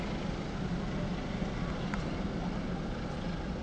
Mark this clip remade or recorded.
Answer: recorded